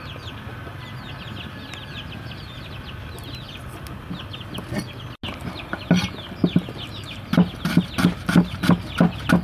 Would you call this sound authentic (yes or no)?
yes